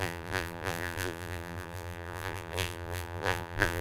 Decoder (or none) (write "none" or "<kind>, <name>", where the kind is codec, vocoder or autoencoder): vocoder, BigVGAN v2